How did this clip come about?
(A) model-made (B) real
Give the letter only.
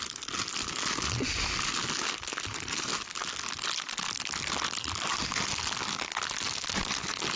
B